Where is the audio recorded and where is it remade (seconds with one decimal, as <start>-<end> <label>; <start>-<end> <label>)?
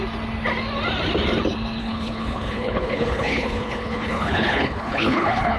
0.0-1.8 recorded; 1.8-5.6 remade